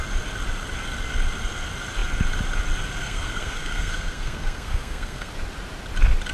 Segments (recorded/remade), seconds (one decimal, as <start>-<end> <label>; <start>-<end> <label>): 0.0-3.0 recorded; 3.0-5.3 remade; 5.3-6.3 recorded